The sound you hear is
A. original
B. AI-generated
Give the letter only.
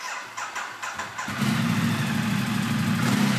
A